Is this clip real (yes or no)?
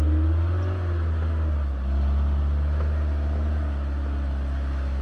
yes